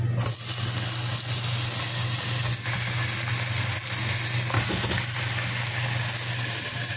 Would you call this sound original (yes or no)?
yes